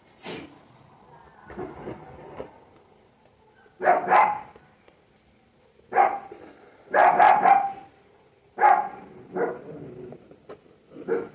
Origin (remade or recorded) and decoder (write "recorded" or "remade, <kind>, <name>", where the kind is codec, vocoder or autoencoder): recorded